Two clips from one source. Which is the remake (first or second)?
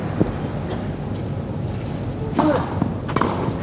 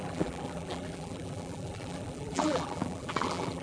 second